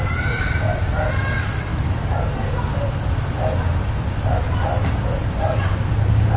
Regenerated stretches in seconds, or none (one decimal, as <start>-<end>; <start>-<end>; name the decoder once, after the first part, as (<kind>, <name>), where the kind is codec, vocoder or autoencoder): none

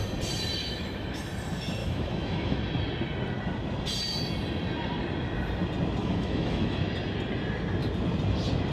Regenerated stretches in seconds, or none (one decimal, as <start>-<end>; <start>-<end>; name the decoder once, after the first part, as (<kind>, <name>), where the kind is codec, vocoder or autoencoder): 0.6-1.2 (autoencoder, DAC-VAE); 1.8-2.6; 6.0-6.8